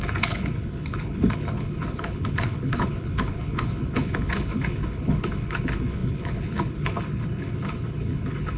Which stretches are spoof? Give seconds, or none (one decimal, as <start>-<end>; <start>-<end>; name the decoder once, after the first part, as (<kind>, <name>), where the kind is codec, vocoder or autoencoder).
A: 0.0-8.6 (codec, HILCodec)